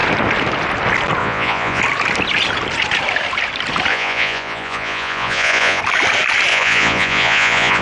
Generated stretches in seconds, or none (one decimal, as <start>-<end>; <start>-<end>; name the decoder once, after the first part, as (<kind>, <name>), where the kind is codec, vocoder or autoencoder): 1.2-1.8 (vocoder, Vocos); 3.9-5.8; 6.5-7.8